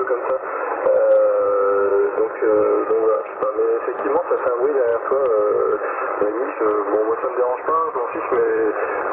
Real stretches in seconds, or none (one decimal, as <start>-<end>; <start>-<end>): 0.0-1.9; 3.4-9.1